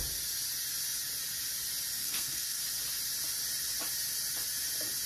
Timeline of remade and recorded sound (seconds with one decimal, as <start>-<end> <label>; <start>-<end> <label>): 0.0-2.0 recorded; 2.0-2.6 remade; 2.6-5.1 recorded